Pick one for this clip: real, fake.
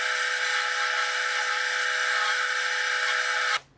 real